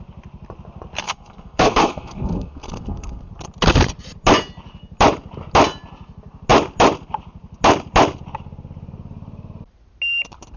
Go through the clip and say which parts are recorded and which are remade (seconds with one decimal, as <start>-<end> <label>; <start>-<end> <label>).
0.0-1.0 recorded; 1.0-3.3 remade; 3.3-10.6 recorded